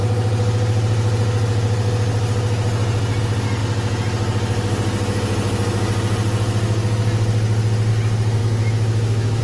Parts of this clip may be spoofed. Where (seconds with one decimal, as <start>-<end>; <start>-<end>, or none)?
8.4-9.4